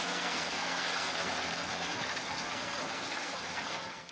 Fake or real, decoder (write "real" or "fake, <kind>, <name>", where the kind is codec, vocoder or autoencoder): fake, codec, SNAC